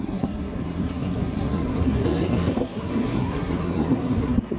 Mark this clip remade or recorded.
remade